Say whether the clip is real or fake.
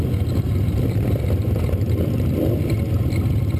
real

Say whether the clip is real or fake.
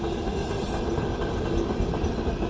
real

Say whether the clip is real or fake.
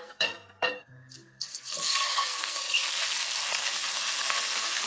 fake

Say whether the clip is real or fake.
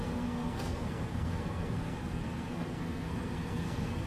fake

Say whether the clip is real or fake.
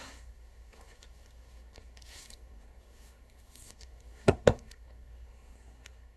fake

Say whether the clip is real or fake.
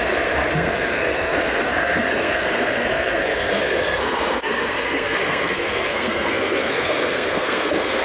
fake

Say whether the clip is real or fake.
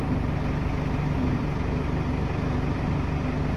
real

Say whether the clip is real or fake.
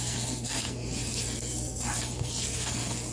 fake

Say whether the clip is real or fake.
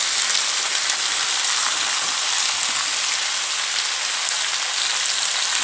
real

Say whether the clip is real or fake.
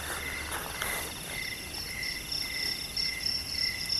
real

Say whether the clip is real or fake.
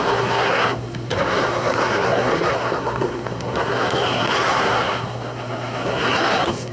fake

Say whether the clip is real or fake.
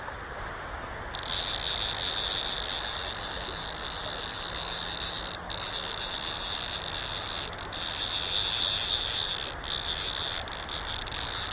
real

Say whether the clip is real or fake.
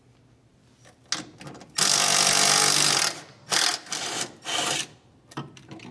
real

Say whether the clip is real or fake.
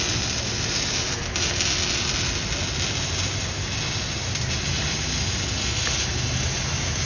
real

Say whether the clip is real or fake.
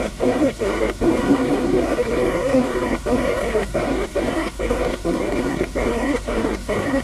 fake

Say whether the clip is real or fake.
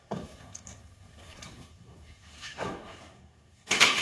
fake